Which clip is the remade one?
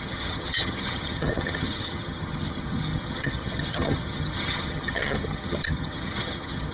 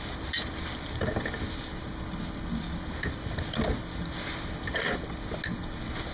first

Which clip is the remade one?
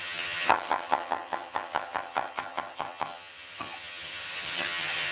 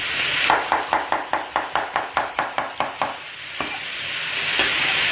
first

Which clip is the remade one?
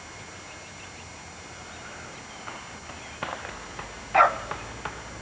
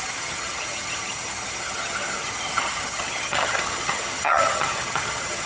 second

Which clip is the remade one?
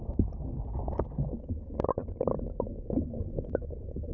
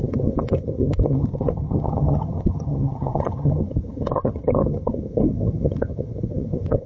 second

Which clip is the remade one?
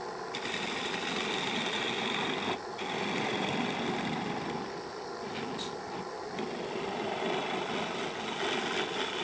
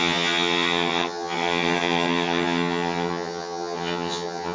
second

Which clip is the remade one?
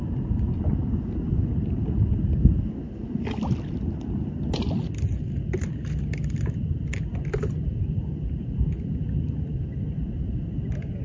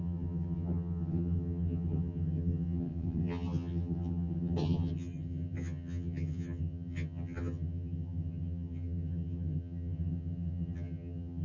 second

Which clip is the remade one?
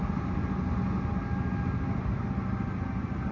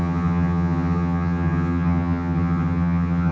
second